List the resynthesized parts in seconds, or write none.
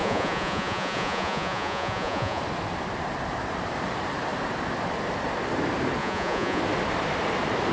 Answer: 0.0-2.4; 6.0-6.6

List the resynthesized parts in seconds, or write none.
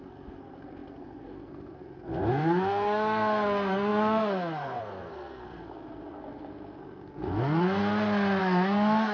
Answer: 0.0-7.8; 8.4-9.1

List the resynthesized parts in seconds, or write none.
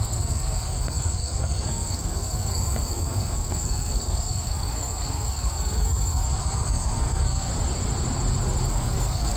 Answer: 0.0-7.5; 8.7-9.4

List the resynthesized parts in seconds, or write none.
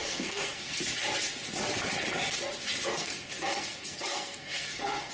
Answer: 0.0-0.8; 2.9-5.1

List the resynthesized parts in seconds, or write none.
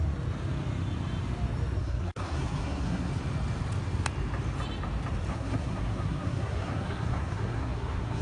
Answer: 1.8-3.1; 5.3-8.2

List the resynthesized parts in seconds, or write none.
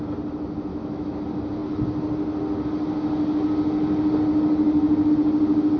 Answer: 0.7-1.2